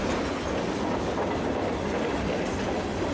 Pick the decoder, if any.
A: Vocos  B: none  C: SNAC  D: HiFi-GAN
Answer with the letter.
B